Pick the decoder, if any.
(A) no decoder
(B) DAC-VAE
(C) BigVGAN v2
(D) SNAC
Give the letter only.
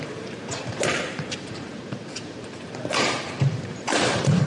C